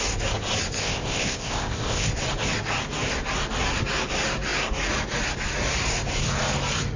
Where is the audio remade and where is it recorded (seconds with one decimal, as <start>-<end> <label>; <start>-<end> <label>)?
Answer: 0.0-0.8 recorded; 0.8-2.1 remade; 2.1-7.0 recorded